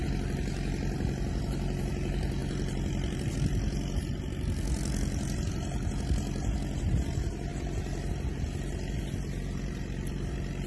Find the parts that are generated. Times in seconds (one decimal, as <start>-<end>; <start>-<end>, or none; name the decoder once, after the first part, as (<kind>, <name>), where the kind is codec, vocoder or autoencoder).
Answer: 2.4-3.3 (vocoder, BigVGAN v2)